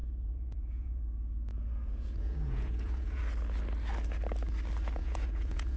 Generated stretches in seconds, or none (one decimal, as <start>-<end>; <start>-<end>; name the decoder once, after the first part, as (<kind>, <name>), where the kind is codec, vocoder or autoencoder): 0.0-1.0 (vocoder, Vocos); 1.5-3.2; 5.0-5.8